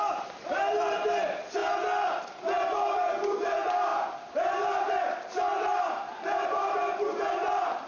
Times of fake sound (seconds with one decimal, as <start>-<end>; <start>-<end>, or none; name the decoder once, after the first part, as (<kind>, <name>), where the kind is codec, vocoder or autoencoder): 0.5-1.2 (vocoder, BigVGAN v2); 3.9-4.9; 5.7-6.7